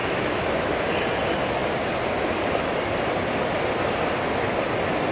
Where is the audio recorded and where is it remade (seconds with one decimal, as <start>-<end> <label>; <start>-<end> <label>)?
0.0-0.7 remade; 0.7-5.1 recorded